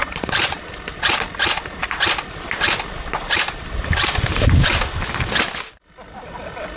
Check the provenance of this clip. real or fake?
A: real